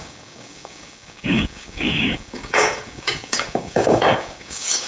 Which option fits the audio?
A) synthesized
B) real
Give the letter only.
A